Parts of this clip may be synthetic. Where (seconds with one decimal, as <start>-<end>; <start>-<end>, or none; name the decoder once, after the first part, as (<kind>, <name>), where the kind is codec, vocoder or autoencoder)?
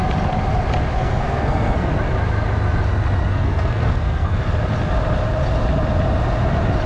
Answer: 1.0-1.9 (codec, SNAC); 3.3-4.4